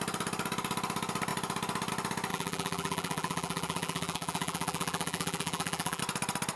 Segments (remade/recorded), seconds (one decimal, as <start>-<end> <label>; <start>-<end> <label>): 0.0-2.3 recorded; 2.3-6.0 remade; 6.0-6.6 recorded